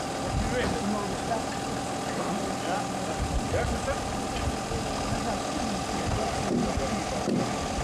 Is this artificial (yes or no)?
no